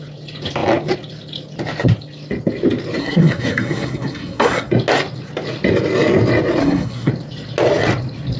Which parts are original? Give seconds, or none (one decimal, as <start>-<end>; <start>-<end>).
0.0-3.0; 4.7-6.6; 7.1-8.4